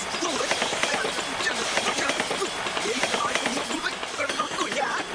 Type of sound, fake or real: real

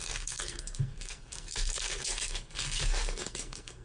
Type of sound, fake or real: fake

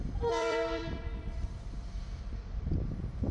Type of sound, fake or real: fake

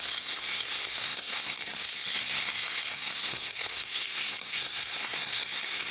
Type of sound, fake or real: fake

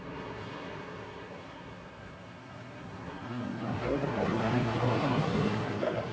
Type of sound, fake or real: fake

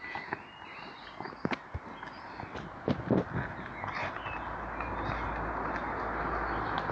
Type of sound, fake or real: real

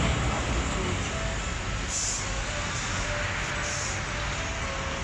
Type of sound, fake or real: real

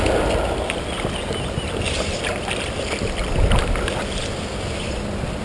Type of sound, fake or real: real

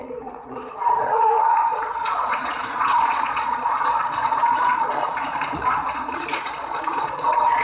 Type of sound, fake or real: fake